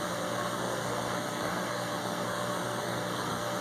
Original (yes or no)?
no